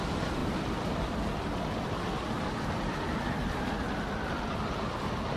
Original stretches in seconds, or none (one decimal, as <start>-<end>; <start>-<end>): 0.0-5.4